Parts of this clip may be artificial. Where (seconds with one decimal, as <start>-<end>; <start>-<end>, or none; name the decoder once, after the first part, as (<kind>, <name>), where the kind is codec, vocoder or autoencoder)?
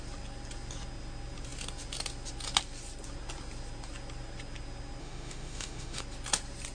5.0-6.0 (autoencoder, DAC-VAE)